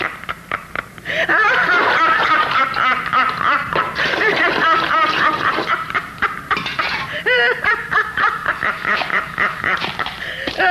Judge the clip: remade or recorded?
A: remade